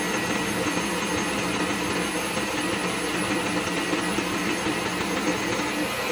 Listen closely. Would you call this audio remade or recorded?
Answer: recorded